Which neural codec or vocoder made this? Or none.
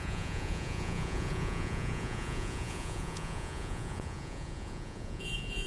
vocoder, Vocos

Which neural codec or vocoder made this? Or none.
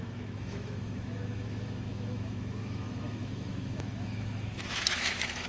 autoencoder, DAC-VAE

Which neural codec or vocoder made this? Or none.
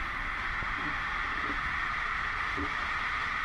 none